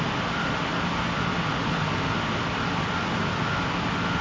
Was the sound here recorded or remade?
recorded